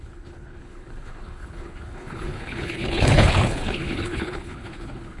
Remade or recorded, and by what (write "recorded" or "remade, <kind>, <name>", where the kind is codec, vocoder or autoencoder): remade, codec, HILCodec